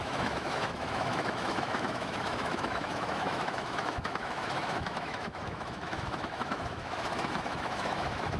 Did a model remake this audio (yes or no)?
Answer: yes